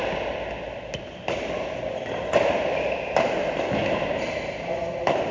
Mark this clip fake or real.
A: real